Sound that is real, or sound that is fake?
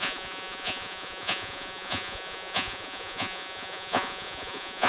fake